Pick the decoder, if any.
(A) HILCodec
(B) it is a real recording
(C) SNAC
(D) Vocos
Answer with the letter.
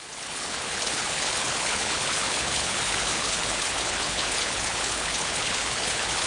A